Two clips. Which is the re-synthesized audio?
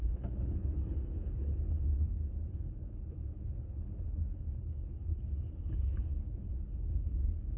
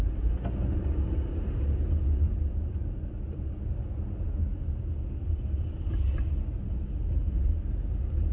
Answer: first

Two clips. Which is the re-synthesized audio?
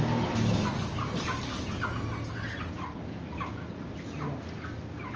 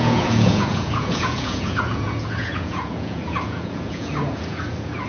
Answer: second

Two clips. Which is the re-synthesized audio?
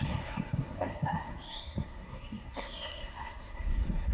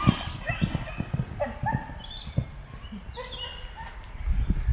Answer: first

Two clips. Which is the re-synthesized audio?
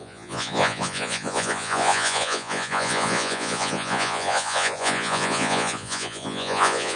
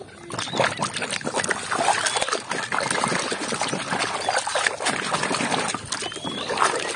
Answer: first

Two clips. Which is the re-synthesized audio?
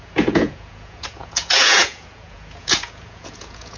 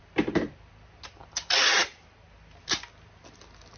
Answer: first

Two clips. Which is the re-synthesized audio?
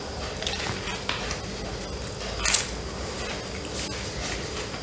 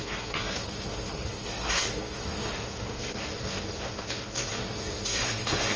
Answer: second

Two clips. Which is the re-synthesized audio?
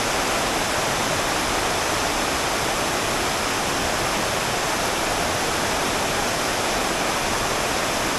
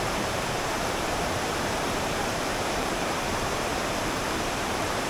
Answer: second